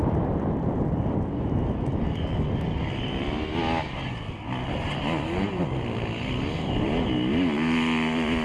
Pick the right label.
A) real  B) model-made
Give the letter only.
A